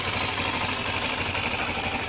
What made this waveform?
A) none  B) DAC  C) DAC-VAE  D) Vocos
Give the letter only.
A